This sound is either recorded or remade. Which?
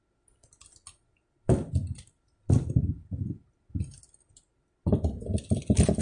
recorded